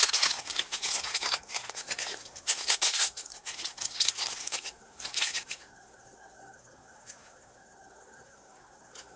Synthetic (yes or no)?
yes